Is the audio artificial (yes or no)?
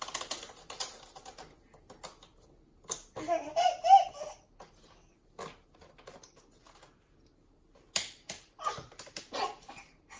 no